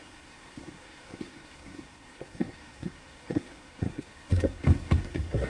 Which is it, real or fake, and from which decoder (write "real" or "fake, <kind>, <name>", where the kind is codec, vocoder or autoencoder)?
fake, codec, SNAC